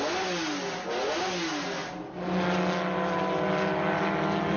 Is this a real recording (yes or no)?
yes